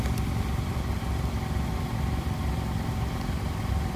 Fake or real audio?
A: fake